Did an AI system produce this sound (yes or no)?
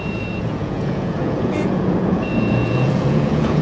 yes